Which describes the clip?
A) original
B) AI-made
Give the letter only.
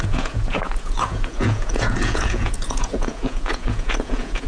B